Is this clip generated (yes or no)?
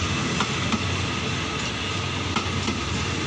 no